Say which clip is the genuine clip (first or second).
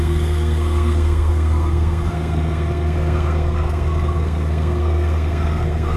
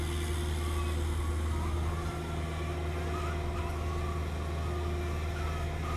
second